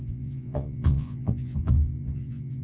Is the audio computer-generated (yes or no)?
yes